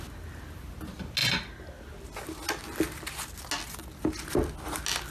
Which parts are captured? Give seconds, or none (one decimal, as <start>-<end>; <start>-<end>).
0.0-5.1